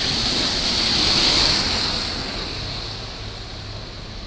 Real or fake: real